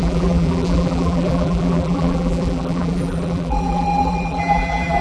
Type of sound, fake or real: fake